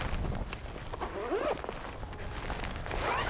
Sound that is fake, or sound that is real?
real